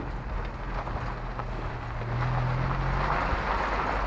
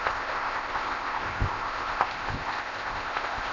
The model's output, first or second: second